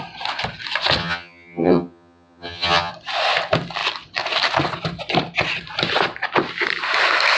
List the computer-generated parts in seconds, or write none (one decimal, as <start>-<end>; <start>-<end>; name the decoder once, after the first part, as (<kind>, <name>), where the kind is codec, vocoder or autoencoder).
1.0-2.9 (vocoder, HiFi-GAN)